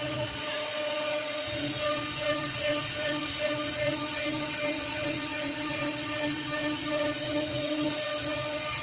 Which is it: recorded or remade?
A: remade